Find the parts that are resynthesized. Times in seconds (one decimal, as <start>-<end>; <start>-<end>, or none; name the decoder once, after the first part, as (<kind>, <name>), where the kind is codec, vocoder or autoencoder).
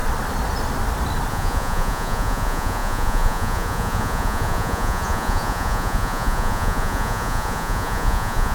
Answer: 1.3-8.5 (vocoder, Vocos)